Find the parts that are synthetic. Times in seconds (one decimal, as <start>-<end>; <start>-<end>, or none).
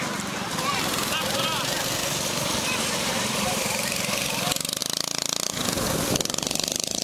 0.0-4.8; 5.9-7.0